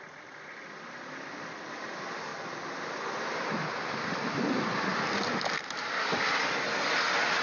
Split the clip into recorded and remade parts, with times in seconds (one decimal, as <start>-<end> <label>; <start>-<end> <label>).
0.0-2.3 remade; 2.3-6.7 recorded; 6.7-7.4 remade